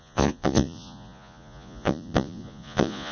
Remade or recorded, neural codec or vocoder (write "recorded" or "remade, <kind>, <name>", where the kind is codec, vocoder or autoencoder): remade, vocoder, Vocos